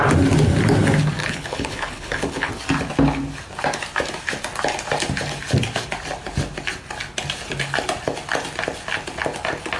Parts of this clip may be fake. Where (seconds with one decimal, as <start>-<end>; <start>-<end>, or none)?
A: 1.2-2.5